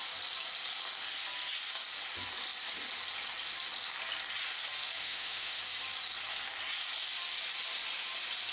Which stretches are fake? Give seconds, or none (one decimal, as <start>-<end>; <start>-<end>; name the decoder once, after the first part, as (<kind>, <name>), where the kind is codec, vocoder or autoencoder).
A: 5.0-5.6 (autoencoder, DAC-VAE)